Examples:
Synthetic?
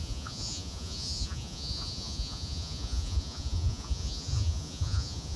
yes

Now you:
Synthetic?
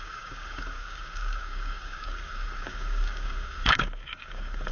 yes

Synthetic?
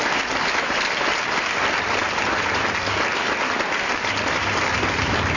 no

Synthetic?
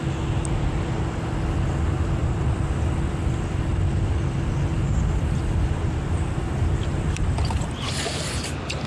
no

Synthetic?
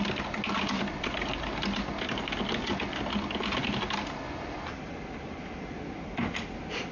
no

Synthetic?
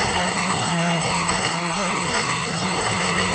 yes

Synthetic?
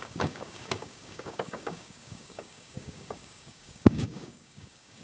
yes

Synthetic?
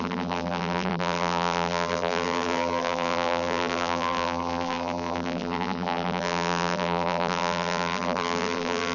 yes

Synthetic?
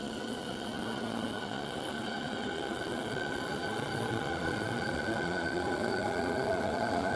yes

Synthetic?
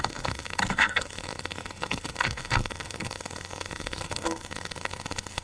yes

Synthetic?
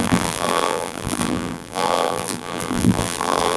yes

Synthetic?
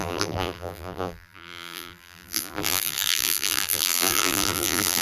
yes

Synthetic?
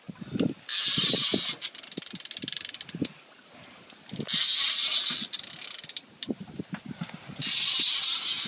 no